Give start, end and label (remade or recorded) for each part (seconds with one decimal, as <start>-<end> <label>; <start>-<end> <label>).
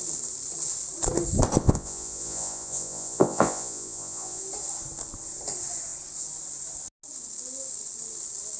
0.0-1.6 recorded; 1.6-4.4 remade; 4.4-8.6 recorded